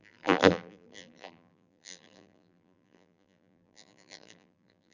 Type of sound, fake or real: fake